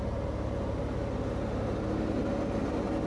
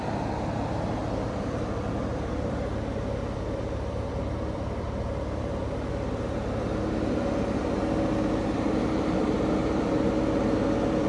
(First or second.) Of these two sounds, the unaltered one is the first